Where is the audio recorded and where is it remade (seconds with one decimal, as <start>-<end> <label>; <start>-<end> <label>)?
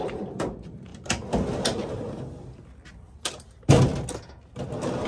0.0-5.1 recorded